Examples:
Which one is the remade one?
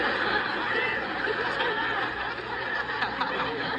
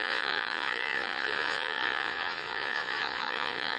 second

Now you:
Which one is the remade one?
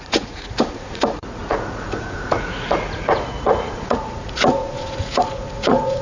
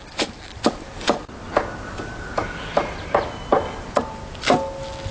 first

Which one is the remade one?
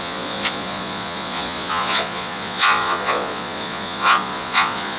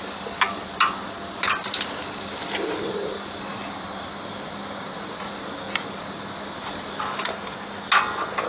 first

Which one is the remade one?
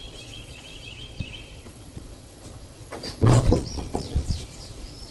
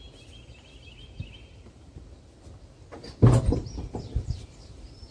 first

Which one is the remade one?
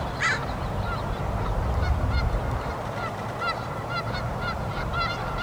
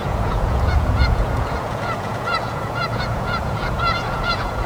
second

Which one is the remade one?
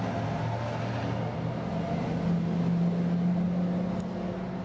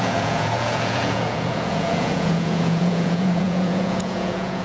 second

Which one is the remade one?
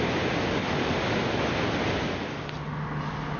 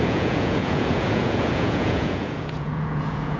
second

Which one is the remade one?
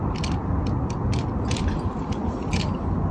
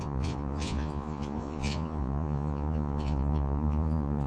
second